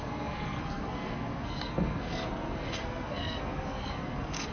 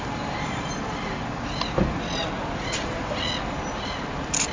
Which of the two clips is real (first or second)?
second